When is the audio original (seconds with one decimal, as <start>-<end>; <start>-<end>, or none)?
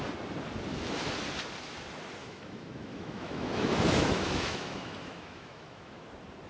0.0-2.2; 6.1-6.5